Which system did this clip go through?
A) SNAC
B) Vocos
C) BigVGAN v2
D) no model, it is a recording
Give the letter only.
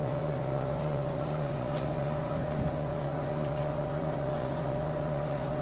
B